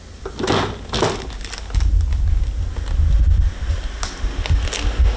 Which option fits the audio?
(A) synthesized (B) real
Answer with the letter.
B